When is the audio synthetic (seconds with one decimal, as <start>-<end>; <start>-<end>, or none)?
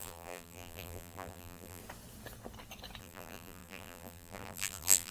0.0-1.8; 3.0-5.1